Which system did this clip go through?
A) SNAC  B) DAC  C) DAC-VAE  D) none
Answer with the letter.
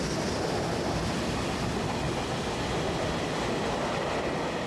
D